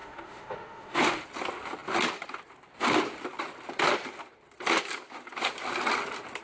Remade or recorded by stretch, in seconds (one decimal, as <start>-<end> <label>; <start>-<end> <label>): 0.0-1.2 remade; 1.2-6.4 recorded